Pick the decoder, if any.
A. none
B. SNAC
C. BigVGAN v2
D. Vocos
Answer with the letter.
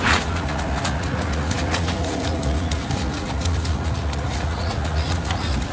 D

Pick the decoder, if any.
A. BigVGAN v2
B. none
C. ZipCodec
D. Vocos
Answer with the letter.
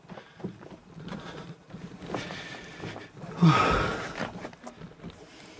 B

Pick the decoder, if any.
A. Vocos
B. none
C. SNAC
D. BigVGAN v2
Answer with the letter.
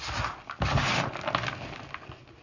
B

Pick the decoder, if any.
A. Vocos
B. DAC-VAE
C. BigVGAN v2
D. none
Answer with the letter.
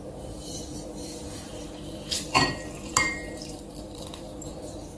C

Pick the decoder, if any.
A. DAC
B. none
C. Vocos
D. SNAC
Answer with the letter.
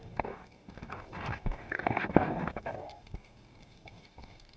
A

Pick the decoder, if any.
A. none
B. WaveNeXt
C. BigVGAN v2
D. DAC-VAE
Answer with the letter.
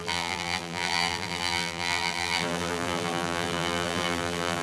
C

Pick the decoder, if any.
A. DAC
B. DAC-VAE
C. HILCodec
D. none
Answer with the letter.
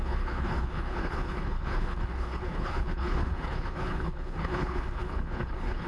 C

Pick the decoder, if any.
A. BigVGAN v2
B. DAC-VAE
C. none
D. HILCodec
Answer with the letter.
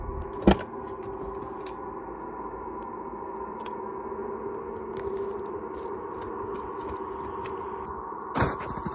C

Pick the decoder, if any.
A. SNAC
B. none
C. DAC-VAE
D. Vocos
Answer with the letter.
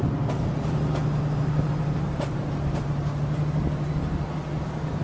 B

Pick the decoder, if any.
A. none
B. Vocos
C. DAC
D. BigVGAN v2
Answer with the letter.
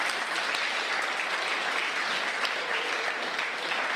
A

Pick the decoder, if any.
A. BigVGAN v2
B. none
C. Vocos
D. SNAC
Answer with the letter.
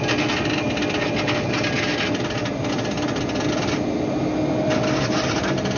B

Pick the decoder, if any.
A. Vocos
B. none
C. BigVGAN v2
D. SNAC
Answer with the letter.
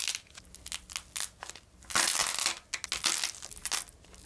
B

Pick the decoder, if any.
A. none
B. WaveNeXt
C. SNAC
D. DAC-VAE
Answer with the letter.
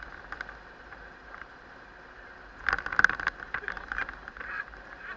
A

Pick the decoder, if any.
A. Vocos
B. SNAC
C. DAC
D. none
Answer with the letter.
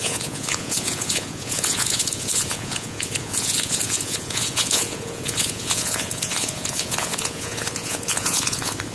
A